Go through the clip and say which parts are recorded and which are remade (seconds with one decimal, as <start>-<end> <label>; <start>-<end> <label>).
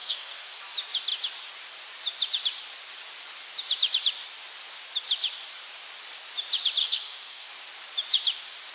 0.0-0.6 remade; 0.6-6.8 recorded; 6.8-7.5 remade; 7.5-8.7 recorded